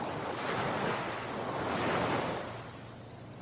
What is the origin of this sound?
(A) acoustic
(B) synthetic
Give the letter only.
A